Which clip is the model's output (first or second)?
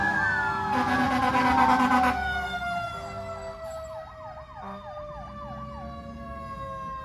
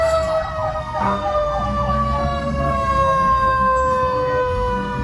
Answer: second